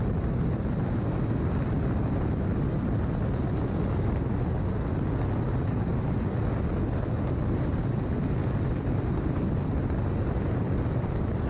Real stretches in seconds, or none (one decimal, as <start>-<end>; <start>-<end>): 0.0-8.4; 9.8-11.5